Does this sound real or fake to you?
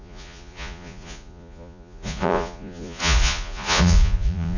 fake